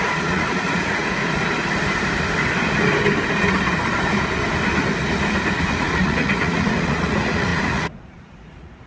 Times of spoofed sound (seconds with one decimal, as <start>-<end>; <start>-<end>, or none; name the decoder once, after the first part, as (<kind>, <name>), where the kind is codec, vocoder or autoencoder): 0.0-1.2 (vocoder, Vocos); 5.6-8.9